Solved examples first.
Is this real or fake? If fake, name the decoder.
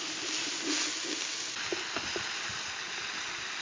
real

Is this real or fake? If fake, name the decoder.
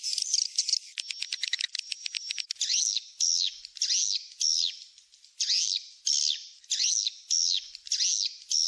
real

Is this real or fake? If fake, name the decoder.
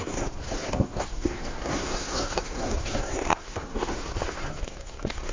fake, codec, SNAC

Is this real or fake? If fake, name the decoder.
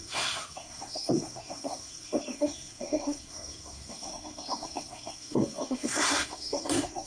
fake, codec, SNAC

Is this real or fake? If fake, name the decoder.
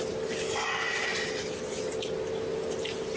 real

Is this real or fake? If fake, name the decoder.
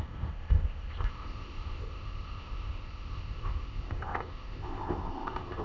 fake, codec, ZipCodec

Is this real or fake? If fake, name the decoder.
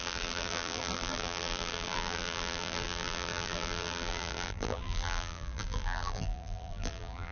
fake, vocoder, BigVGAN v2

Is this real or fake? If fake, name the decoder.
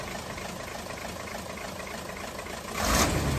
real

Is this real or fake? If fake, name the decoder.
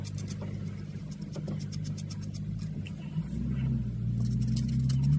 real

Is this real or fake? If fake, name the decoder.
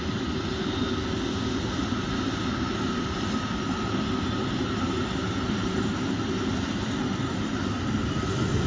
real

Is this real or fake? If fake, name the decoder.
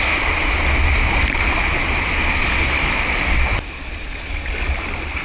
real